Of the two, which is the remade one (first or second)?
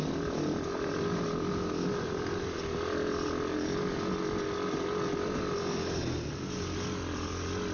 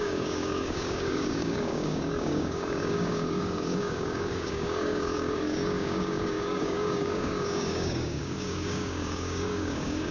second